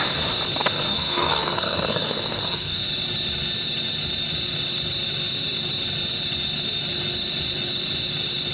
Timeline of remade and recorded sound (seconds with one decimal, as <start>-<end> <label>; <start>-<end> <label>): 0.0-0.9 recorded; 0.9-2.8 remade; 2.8-8.5 recorded